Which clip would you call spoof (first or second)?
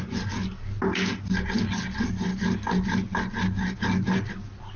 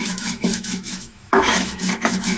second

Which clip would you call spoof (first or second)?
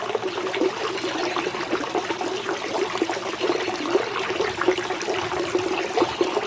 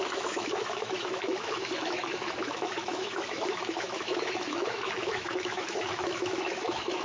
second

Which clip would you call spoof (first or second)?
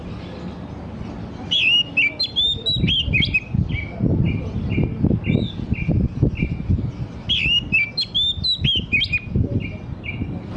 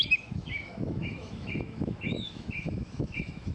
second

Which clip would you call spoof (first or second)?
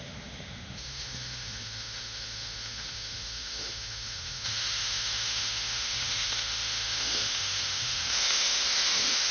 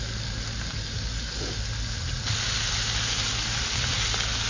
first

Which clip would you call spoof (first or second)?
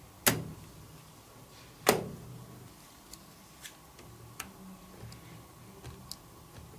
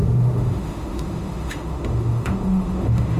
second